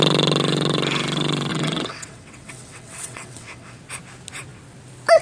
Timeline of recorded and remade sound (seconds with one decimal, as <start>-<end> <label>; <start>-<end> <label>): 0.0-1.5 recorded; 1.5-3.8 remade; 3.8-5.2 recorded